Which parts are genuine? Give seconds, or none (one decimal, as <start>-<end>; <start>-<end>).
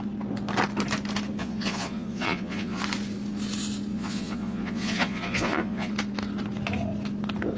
0.0-1.4; 2.8-3.9; 5.9-7.6